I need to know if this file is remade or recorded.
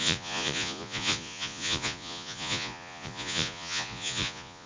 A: remade